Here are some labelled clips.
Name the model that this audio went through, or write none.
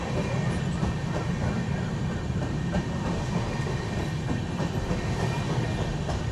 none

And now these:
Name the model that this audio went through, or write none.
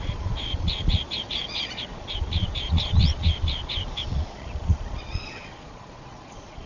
vocoder, Vocos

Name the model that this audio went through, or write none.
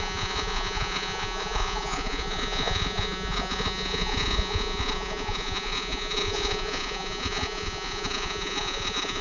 vocoder, Vocos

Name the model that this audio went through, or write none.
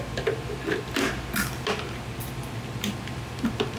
none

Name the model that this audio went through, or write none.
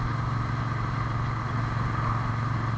none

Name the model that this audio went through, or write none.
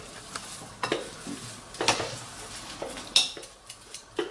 none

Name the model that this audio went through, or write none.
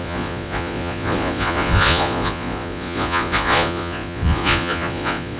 vocoder, Vocos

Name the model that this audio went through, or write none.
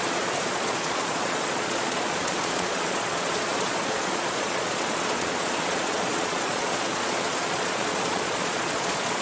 vocoder, Vocos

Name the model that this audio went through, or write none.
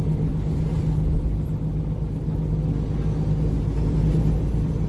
none